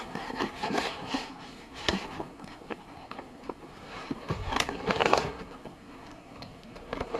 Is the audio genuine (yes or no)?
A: no